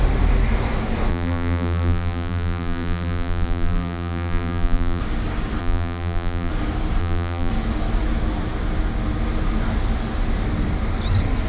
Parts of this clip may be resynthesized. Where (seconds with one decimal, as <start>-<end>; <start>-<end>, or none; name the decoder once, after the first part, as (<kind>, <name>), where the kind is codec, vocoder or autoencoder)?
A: 1.1-5.0 (vocoder, BigVGAN v2); 5.6-6.5; 7.0-7.5